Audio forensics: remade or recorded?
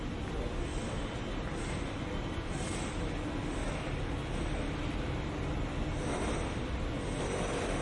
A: recorded